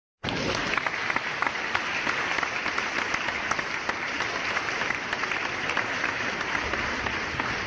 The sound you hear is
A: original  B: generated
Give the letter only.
A